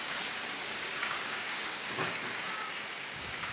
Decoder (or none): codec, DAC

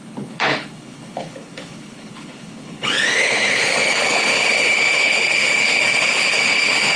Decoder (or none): codec, HILCodec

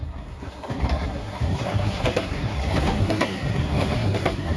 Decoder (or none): codec, SNAC